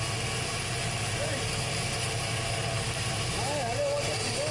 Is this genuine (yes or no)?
yes